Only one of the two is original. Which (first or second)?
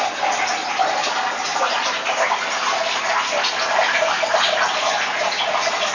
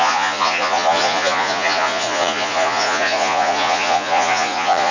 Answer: first